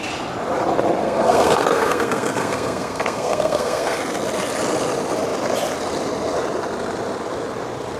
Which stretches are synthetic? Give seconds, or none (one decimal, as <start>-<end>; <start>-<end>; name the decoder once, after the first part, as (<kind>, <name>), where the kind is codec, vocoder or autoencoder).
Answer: 1.0-4.0 (codec, SNAC)